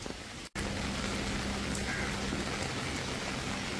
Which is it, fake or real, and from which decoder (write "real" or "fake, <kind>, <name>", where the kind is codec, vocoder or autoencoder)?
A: real